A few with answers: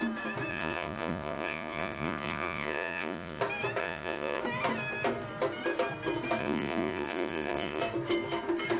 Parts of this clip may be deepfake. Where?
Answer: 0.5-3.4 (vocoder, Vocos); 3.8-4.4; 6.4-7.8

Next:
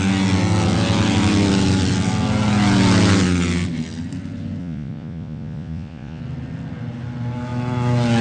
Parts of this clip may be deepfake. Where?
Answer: 4.6-6.2 (vocoder, Vocos)

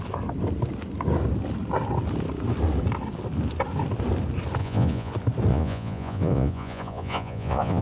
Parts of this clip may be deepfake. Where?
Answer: 4.6-5.1 (vocoder, Vocos); 5.5-7.8

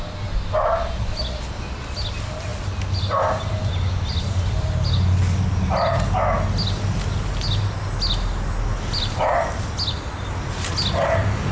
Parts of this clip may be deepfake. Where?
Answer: none

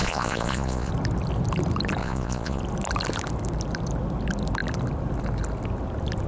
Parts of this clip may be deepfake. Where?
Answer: 0.0-0.9 (vocoder, Vocos); 2.0-2.6

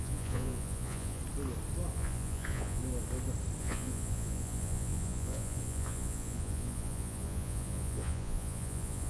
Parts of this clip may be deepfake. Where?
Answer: 0.0-1.2 (vocoder, Vocos); 1.9-2.8; 3.6-9.1

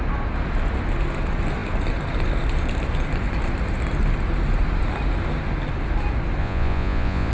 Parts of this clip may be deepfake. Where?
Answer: 6.4-7.3 (vocoder, Vocos)